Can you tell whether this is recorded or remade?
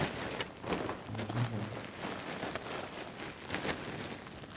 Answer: recorded